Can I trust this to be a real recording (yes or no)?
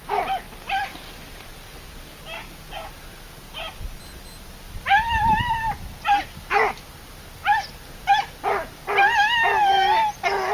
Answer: yes